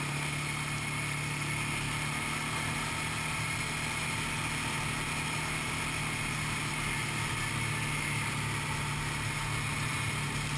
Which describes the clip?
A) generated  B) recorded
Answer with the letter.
B